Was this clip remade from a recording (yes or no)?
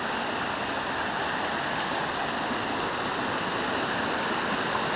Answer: no